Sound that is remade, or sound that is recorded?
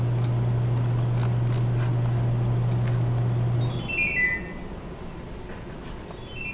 recorded